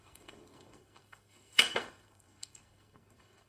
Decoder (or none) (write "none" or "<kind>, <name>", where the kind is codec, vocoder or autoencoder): codec, SNAC